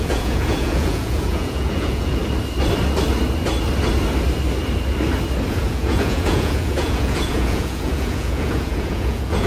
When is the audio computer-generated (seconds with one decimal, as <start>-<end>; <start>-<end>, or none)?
0.0-2.2; 5.5-9.5